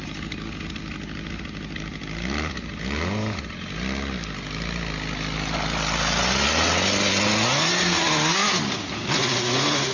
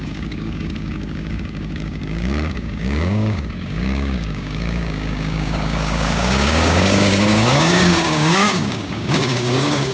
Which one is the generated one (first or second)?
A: second